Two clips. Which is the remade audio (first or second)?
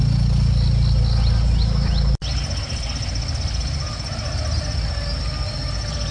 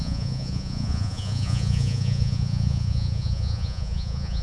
second